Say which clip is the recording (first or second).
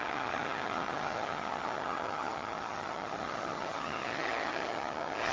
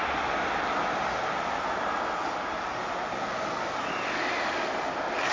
second